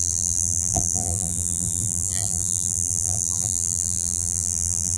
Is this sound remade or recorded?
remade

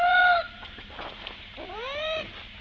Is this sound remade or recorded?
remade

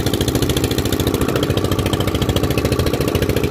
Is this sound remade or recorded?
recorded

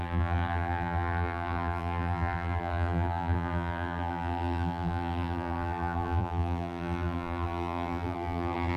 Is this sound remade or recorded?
remade